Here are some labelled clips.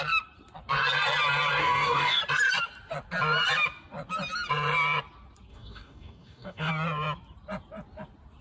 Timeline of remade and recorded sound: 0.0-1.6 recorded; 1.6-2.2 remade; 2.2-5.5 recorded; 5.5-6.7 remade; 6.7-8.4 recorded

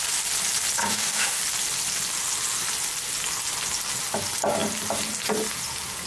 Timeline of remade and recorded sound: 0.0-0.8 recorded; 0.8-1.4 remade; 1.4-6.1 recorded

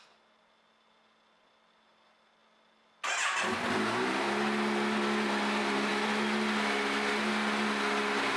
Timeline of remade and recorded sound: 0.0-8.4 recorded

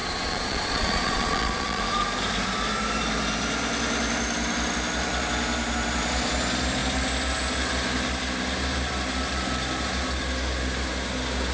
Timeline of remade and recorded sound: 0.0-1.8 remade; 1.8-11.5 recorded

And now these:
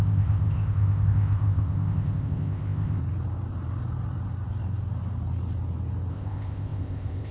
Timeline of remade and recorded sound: 0.0-3.0 remade; 3.0-6.1 recorded; 6.1-7.3 remade